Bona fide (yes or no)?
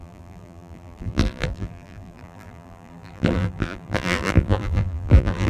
no